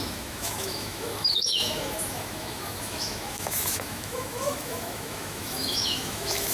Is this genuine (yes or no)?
no